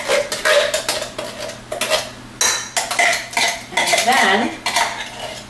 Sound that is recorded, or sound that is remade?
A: recorded